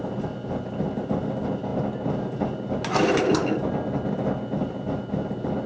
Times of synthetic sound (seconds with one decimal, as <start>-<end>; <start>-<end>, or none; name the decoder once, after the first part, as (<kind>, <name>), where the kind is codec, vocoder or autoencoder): none